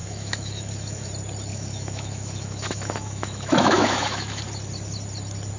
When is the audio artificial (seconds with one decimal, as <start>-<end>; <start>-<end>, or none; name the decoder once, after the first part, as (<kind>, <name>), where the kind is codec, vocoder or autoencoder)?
0.0-1.1 (autoencoder, DAC-VAE); 1.5-4.4